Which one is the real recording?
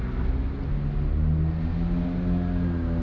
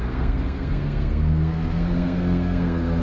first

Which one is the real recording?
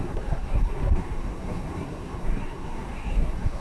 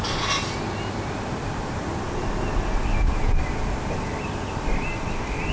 second